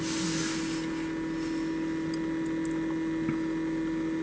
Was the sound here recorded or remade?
recorded